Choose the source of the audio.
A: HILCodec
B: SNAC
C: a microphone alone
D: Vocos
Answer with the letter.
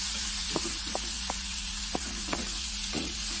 D